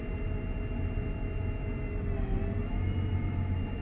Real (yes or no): yes